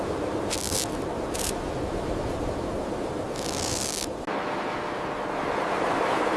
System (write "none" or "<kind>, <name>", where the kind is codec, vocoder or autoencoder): none